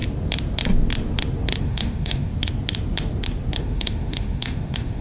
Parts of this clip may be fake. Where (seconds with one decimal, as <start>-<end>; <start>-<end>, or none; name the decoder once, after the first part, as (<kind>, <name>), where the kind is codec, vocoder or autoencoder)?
1.6-2.3 (autoencoder, DAC-VAE); 3.6-5.0